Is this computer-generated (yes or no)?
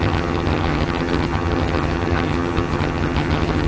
yes